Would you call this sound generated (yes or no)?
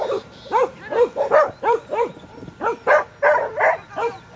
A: yes